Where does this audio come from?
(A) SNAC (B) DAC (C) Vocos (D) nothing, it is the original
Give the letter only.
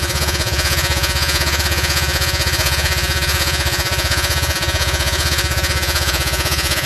C